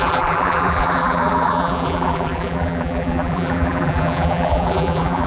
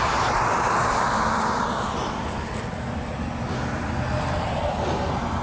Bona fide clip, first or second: second